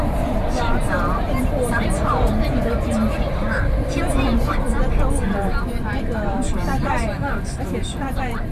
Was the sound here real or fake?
fake